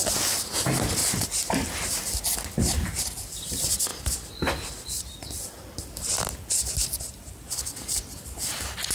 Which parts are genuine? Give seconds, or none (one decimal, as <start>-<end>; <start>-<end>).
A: 0.0-8.9